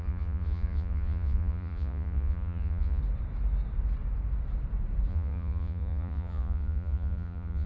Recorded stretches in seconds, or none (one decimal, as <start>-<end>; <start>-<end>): 3.0-5.1